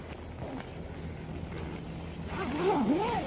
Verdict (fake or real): real